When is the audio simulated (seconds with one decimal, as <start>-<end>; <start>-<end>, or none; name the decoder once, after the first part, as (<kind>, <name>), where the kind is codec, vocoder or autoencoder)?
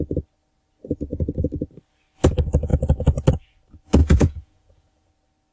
4.0-5.1 (vocoder, Vocos)